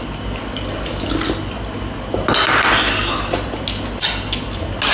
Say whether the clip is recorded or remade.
recorded